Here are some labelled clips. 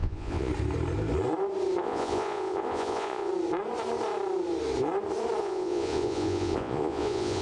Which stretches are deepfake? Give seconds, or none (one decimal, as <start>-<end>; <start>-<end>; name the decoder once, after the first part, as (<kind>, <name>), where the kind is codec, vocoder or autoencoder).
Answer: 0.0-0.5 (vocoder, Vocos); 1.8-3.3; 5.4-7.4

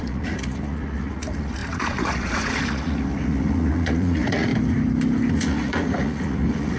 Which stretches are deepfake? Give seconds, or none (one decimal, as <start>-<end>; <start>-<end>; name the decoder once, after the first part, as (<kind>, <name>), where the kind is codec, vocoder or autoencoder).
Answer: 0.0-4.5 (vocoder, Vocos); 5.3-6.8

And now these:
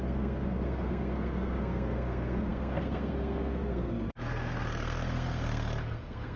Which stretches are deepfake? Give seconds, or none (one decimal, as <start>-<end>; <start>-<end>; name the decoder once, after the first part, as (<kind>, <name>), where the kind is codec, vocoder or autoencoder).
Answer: 0.0-6.4 (codec, SNAC)